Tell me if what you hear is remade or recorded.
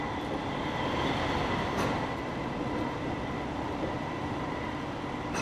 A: recorded